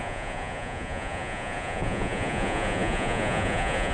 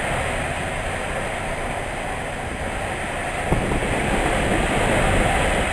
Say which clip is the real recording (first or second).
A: second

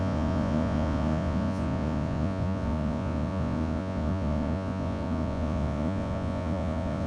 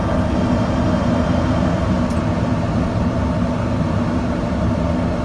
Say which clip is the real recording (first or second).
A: second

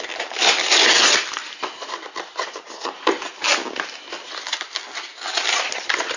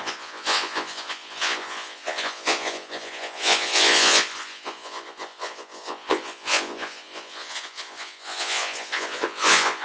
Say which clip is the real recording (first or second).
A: first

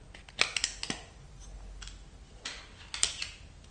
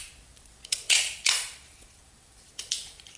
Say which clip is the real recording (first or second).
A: first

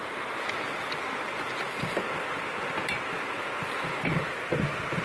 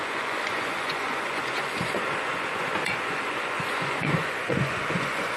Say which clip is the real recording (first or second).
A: first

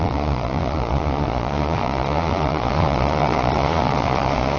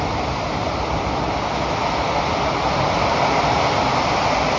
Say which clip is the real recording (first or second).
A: second